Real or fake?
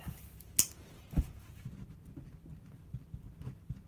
real